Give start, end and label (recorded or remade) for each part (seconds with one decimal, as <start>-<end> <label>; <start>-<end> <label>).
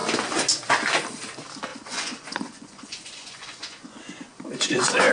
0.0-1.7 recorded; 1.7-5.1 remade